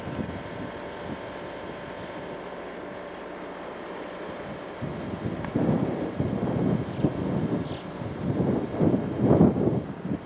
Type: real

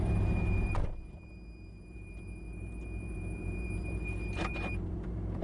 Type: fake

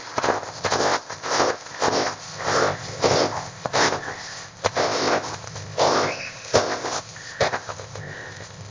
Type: fake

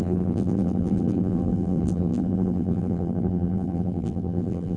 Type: fake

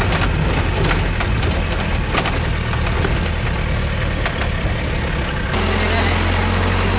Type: real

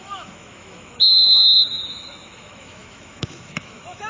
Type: fake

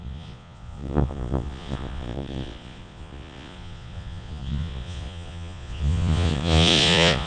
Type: fake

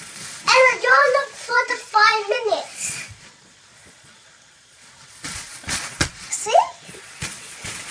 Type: fake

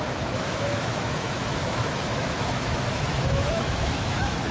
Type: fake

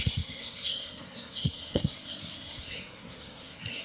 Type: fake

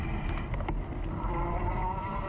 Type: real